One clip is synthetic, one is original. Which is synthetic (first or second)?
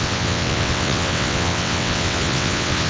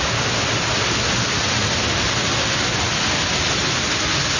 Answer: first